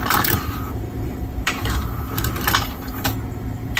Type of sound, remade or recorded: remade